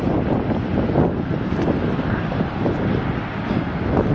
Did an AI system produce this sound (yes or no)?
no